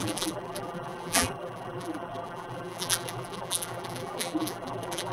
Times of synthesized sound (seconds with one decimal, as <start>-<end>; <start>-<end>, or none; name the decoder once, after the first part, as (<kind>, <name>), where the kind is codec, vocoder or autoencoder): 0.0-5.1 (vocoder, BigVGAN v2)